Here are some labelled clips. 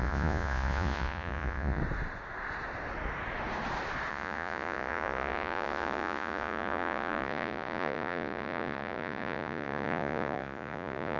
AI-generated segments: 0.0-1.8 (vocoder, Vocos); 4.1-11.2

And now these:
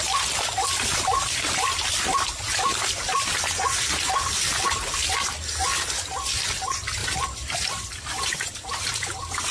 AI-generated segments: 7.0-7.9 (vocoder, BigVGAN v2)